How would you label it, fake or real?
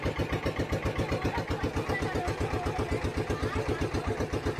real